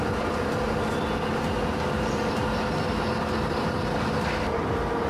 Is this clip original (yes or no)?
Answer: yes